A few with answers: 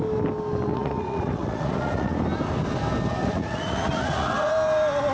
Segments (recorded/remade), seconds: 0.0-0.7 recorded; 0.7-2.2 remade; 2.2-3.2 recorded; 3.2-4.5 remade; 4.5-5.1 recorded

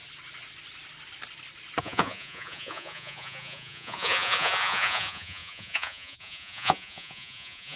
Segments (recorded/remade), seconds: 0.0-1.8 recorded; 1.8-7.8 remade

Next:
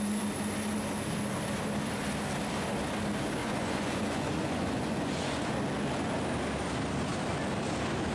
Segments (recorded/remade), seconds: 0.0-3.4 recorded; 3.4-5.5 remade; 5.5-8.1 recorded

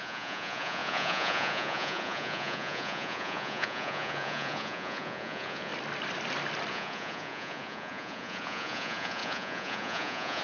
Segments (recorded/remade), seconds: 0.0-5.7 remade; 5.7-6.7 recorded; 6.7-10.4 remade

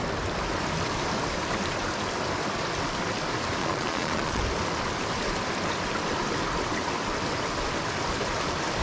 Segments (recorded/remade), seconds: 0.0-3.6 recorded; 3.6-4.4 remade; 4.4-8.8 recorded

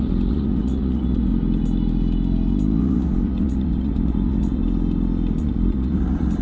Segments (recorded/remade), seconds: 0.0-1.3 remade; 1.3-2.8 recorded; 2.8-4.6 remade; 4.6-5.4 recorded; 5.4-6.4 remade

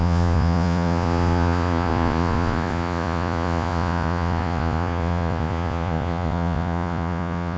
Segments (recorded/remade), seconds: 0.0-7.6 remade